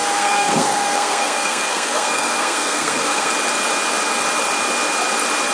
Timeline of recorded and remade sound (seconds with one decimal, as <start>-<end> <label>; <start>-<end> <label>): 0.0-3.3 remade; 3.3-5.5 recorded